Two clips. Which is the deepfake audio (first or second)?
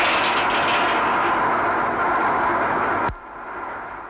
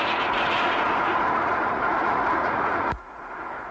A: second